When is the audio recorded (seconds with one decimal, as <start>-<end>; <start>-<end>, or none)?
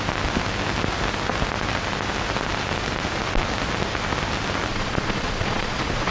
0.0-4.7